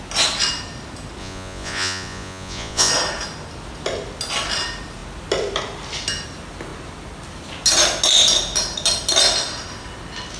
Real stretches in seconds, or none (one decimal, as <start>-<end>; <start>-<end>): 0.0-1.2; 2.9-10.4